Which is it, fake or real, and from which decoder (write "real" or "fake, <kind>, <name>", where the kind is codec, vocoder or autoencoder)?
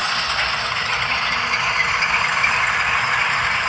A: real